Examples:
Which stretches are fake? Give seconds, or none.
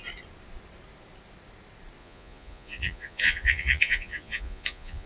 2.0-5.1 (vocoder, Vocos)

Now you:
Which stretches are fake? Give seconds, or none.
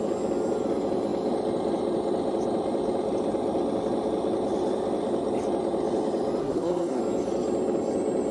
6.4-7.0 (codec, SNAC)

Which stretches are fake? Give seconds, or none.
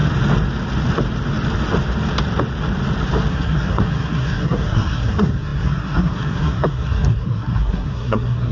3.3-8.5 (codec, SNAC)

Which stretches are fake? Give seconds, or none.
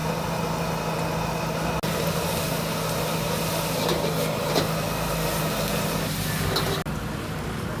none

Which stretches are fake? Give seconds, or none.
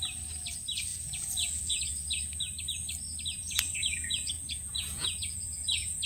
0.9-1.8 (vocoder, Vocos); 3.4-6.1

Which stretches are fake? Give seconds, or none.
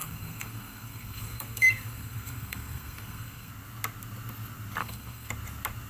0.0-3.5 (codec, SNAC); 4.8-5.3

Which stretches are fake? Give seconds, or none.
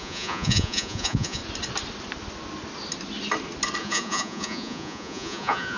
0.0-1.4 (vocoder, Vocos); 3.8-5.8